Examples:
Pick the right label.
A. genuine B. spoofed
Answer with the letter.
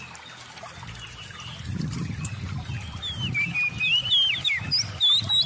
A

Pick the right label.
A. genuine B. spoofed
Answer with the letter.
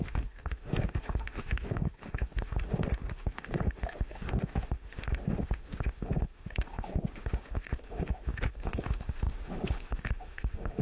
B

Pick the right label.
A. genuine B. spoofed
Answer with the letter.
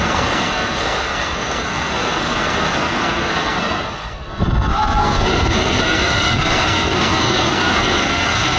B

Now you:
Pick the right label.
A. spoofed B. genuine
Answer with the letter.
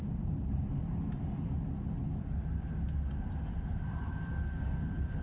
B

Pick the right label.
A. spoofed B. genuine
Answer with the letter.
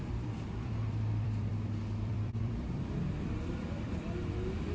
A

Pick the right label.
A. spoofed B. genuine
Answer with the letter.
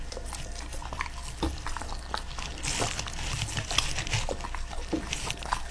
B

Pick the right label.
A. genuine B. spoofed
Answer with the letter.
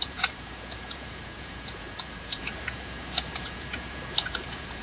B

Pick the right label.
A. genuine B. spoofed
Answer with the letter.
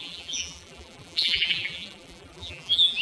B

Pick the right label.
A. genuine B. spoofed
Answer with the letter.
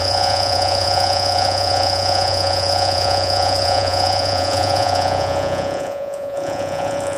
B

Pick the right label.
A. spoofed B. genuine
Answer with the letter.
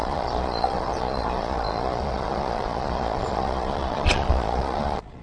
A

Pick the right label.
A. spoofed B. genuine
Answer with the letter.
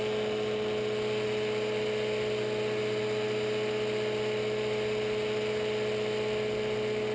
B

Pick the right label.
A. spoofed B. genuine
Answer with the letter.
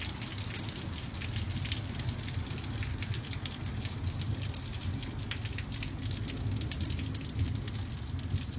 B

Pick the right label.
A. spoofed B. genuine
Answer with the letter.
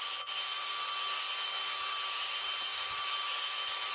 B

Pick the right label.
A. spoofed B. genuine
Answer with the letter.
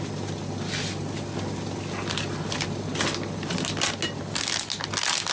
B